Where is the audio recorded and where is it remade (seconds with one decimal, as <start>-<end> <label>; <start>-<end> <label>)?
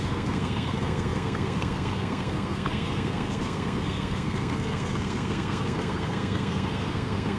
0.0-7.4 remade